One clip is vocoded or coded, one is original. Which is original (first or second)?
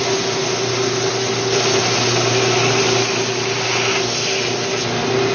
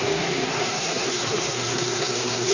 first